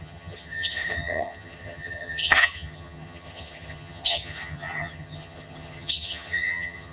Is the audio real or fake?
fake